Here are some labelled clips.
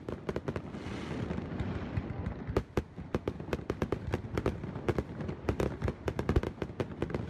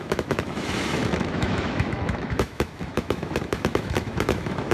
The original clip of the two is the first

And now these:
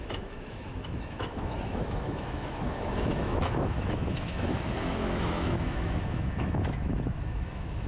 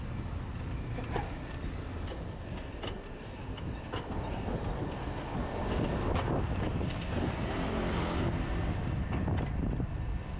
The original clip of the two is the second